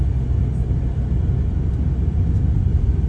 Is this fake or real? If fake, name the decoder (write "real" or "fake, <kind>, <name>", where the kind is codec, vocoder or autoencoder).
real